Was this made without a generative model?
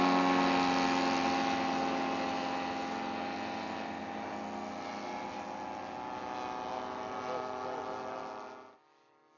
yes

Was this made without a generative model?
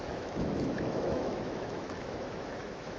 no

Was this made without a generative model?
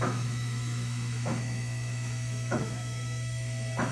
no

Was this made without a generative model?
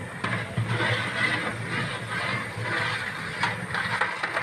yes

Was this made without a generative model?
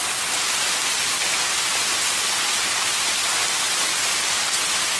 yes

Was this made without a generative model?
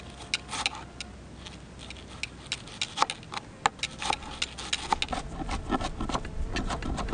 yes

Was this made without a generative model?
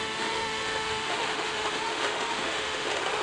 no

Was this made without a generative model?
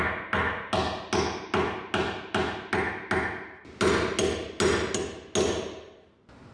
yes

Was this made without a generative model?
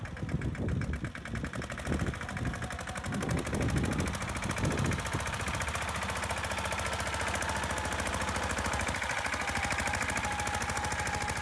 yes